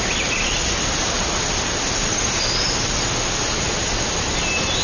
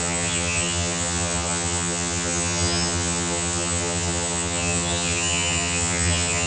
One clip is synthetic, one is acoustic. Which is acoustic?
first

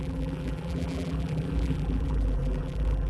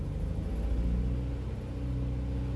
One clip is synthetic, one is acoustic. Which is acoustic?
second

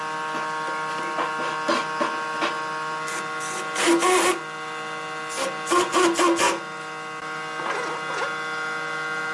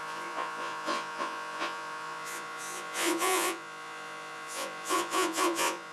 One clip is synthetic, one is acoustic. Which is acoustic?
first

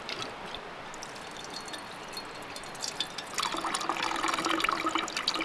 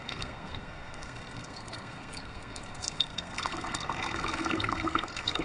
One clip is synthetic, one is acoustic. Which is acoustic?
first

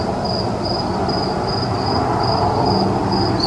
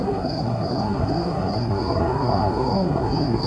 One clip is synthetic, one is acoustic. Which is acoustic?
first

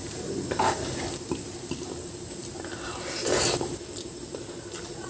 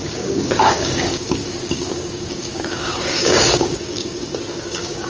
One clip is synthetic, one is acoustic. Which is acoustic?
first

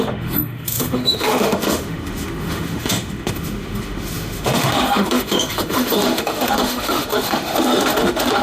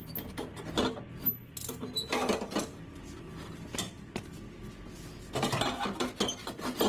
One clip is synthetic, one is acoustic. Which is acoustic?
second